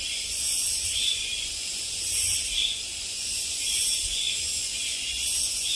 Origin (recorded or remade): remade